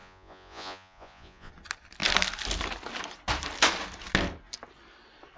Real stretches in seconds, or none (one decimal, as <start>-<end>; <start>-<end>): 1.5-5.4